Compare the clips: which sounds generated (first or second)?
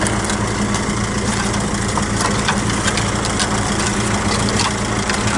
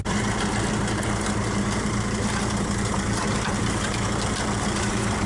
second